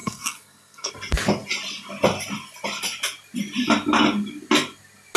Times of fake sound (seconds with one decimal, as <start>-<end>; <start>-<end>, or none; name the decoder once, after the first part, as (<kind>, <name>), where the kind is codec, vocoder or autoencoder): 0.0-0.9 (codec, SNAC)